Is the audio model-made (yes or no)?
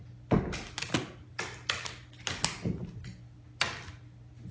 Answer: no